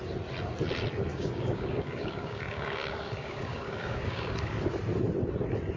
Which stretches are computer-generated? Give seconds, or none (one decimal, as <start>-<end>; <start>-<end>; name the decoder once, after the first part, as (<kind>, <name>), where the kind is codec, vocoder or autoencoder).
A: 1.1-4.6 (codec, DAC)